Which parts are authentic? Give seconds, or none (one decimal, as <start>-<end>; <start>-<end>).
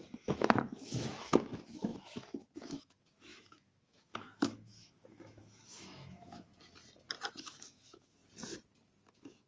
6.5-7.4; 8.2-9.1